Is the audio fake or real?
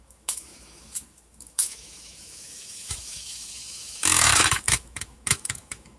fake